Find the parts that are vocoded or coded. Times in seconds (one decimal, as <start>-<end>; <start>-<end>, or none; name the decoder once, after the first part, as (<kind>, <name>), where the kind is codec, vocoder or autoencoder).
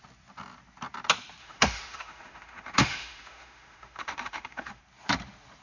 1.4-4.8 (autoencoder, DAC-VAE)